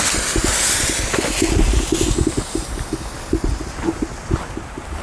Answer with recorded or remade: recorded